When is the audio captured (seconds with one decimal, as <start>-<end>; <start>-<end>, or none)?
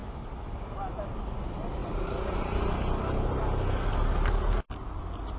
1.1-5.4